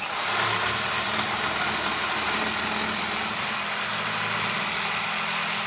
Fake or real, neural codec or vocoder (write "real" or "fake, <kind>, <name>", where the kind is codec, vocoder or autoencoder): real